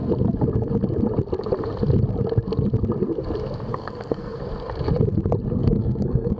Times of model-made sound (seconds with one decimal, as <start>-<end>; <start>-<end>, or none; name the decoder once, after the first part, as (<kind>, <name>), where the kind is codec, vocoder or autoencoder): 3.7-4.4 (codec, SNAC); 5.6-6.4